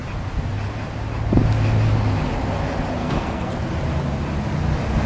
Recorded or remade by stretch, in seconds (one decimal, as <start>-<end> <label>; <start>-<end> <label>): 0.0-3.0 recorded; 3.0-3.5 remade; 3.5-5.1 recorded